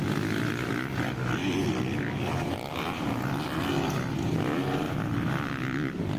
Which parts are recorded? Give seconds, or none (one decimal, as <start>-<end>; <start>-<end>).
0.0-6.2